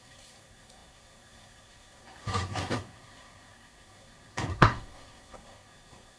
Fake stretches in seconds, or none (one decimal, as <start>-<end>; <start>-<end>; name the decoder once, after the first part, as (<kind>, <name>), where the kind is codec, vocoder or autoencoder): 0.0-6.2 (codec, SNAC)